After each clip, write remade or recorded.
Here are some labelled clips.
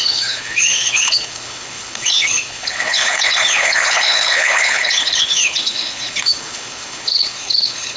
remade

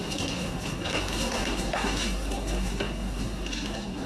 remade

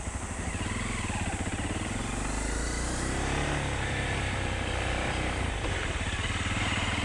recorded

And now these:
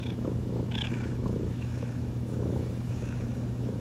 remade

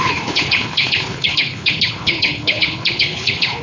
remade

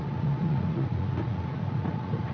remade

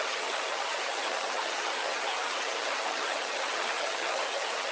remade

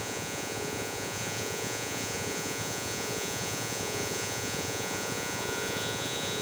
remade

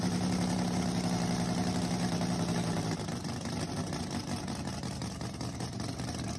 recorded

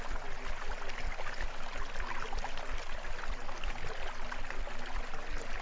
recorded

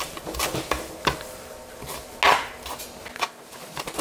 recorded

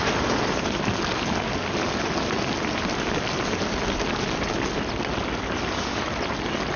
recorded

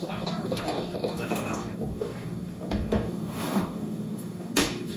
remade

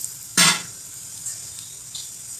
remade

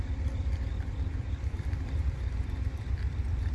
remade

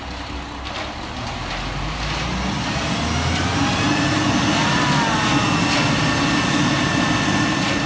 recorded